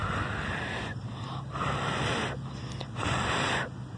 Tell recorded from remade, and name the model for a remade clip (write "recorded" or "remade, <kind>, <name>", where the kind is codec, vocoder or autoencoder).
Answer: recorded